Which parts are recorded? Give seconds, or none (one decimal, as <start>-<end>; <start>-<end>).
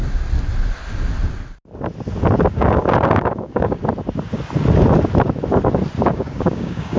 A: 0.0-2.5; 3.8-6.1